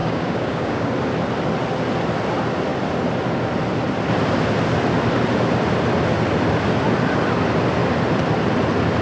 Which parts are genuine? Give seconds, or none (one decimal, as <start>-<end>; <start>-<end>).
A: 0.9-9.0